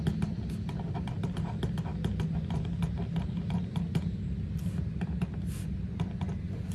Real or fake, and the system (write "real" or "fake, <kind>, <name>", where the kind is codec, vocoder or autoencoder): real